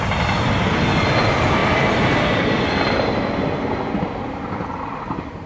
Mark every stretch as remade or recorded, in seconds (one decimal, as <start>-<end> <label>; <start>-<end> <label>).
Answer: 0.0-5.5 recorded